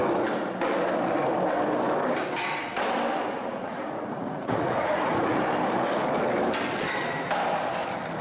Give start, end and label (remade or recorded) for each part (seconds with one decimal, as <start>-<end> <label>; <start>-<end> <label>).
0.0-3.4 recorded; 3.4-5.4 remade; 5.4-8.2 recorded